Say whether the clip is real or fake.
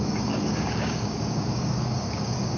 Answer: fake